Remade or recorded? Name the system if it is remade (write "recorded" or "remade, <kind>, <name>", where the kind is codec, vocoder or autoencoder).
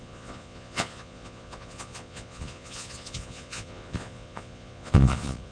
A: remade, vocoder, Vocos